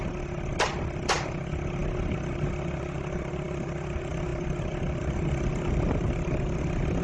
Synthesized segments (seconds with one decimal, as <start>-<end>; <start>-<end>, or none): none